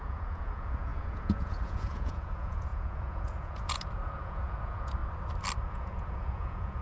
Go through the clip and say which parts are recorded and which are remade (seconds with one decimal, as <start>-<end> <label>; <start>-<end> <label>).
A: 0.0-5.0 remade; 5.0-5.7 recorded; 5.7-6.8 remade